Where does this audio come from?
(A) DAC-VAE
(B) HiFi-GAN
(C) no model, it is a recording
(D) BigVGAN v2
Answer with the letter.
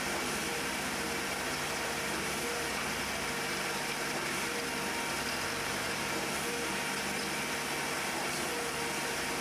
C